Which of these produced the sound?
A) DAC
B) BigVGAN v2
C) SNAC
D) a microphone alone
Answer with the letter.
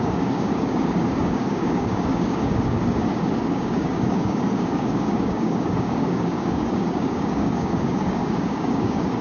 A